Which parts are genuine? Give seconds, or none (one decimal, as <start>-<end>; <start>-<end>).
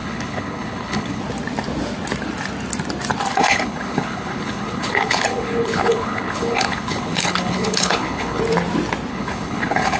1.2-3.3; 8.4-9.1